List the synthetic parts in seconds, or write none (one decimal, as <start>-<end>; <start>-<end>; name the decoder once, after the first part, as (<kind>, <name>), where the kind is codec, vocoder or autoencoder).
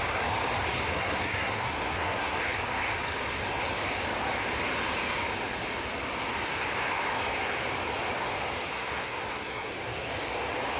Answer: 0.9-2.4 (codec, SNAC); 8.7-9.7